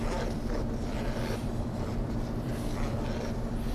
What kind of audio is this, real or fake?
fake